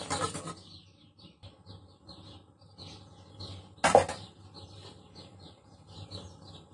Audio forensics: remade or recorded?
recorded